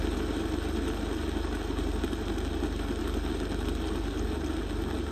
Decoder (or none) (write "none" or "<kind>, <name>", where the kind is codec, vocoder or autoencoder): none